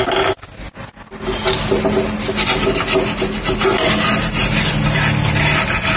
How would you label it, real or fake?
real